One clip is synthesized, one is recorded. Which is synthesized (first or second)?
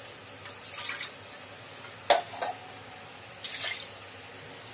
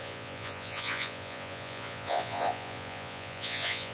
second